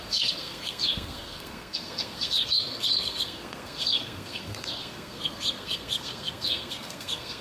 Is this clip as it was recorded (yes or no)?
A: no